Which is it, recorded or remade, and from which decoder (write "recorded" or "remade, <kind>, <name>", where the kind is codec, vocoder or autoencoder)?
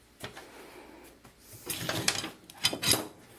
recorded